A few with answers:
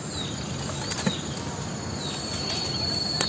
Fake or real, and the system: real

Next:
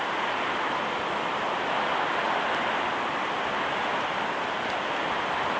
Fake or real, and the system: real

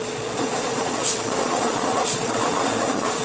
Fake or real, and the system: fake, vocoder, Vocos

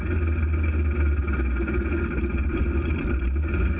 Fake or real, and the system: real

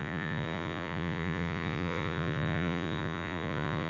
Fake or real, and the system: fake, vocoder, Vocos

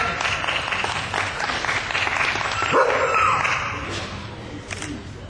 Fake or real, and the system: real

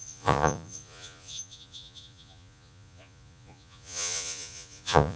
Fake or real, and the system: fake, vocoder, Vocos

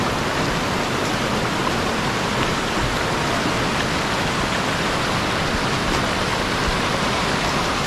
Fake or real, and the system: real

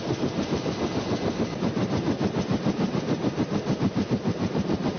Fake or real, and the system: real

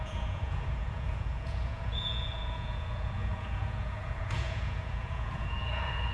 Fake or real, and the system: fake, vocoder, Vocos